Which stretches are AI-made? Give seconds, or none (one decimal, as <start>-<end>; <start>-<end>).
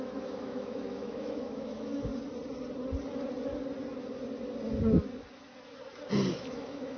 0.0-2.1; 6.3-7.0